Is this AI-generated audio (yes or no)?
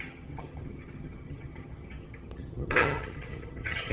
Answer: yes